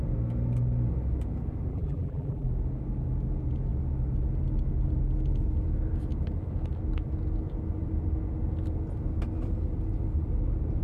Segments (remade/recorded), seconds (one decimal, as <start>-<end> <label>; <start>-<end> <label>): 0.0-1.7 recorded; 1.7-2.5 remade; 2.5-10.8 recorded